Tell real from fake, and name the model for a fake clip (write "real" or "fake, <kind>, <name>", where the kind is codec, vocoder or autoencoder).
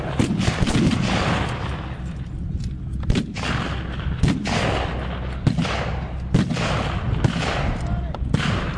real